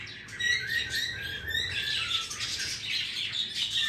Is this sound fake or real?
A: real